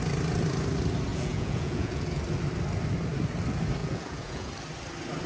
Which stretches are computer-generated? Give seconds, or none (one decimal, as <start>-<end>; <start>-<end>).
1.1-2.2; 3.8-4.5